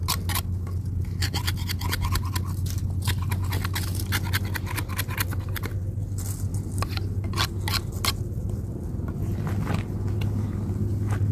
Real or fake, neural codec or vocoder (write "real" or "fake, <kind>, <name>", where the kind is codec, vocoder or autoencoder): real